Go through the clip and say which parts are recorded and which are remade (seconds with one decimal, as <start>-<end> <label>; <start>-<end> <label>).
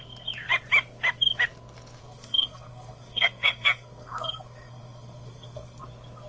0.0-2.0 recorded; 2.0-5.8 remade; 5.8-6.3 recorded